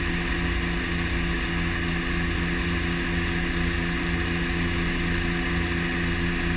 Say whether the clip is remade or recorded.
recorded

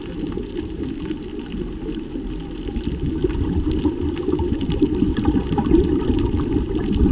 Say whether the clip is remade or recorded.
recorded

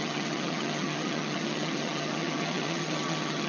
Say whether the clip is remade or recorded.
remade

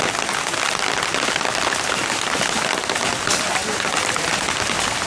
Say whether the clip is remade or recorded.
recorded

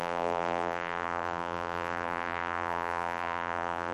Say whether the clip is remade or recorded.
remade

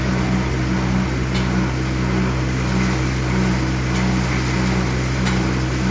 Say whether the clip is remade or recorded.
recorded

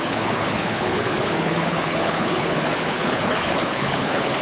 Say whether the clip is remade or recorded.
remade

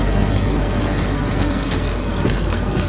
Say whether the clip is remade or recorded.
remade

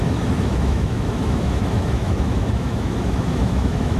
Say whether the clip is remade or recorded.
remade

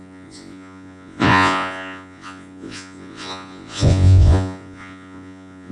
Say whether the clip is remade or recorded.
remade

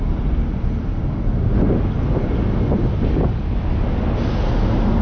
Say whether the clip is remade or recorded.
recorded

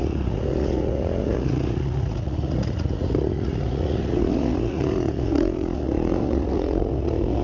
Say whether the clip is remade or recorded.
remade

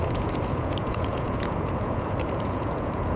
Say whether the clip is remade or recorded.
remade